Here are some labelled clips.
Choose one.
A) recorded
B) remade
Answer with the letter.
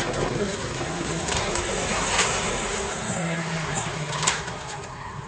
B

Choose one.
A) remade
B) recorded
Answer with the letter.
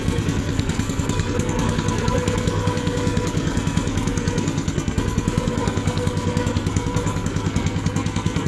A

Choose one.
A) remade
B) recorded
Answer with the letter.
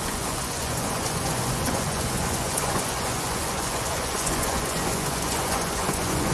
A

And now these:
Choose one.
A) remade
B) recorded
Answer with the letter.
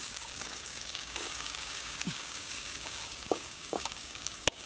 A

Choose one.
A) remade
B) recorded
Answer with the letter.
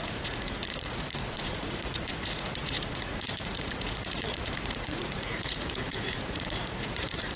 A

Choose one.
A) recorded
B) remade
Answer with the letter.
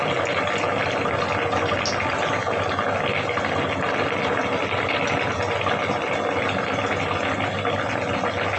A